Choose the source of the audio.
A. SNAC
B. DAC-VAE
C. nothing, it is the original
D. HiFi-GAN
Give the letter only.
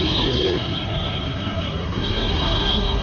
A